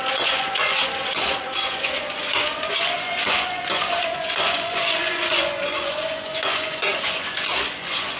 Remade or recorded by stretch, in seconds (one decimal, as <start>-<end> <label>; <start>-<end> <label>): 0.0-8.2 remade